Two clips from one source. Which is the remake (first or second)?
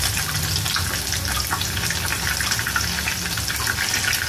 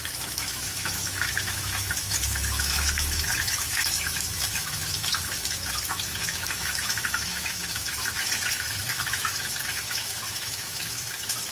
second